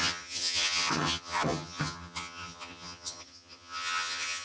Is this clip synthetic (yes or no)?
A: yes